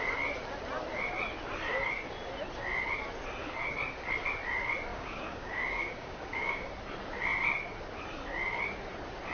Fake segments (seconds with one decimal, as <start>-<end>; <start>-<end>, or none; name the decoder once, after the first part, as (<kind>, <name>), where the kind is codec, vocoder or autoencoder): 4.9-6.7 (codec, DAC)